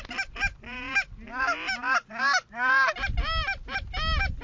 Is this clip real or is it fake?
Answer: real